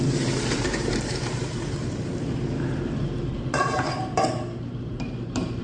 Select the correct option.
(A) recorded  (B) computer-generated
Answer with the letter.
B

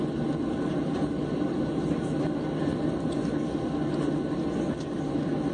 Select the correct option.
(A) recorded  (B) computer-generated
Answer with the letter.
A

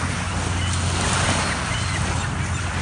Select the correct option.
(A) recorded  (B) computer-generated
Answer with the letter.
A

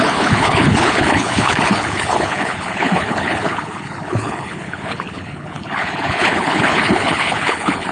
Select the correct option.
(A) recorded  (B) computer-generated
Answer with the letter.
B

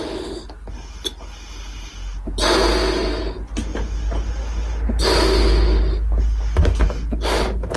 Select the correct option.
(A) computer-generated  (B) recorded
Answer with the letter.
B